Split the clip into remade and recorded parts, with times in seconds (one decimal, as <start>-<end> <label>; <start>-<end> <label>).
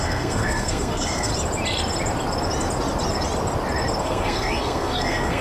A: 0.0-1.3 remade; 1.3-4.0 recorded; 4.0-5.4 remade